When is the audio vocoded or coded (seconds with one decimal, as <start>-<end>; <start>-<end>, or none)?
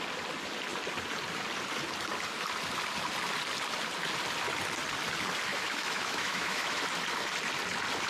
5.5-6.8